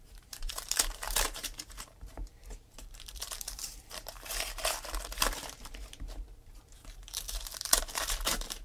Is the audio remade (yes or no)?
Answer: yes